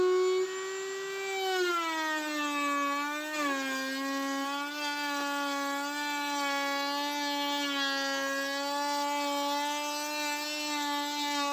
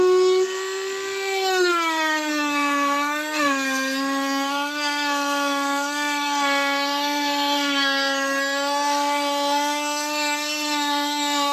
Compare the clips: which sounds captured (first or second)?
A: first